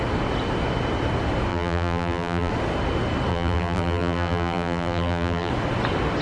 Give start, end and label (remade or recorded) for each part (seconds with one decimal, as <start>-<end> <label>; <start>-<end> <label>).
0.0-1.5 recorded; 1.5-2.5 remade; 2.5-3.3 recorded; 3.3-5.5 remade; 5.5-6.2 recorded